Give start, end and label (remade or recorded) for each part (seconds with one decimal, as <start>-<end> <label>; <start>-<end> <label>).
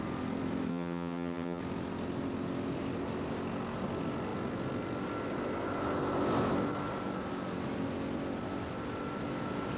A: 0.0-0.7 recorded; 0.7-1.6 remade; 1.6-9.8 recorded